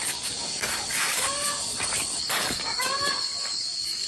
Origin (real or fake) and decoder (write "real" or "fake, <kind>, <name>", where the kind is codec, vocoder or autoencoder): fake, codec, DAC